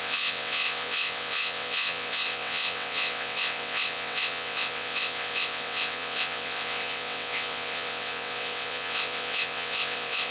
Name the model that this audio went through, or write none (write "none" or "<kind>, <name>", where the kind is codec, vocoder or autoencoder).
vocoder, WaveNeXt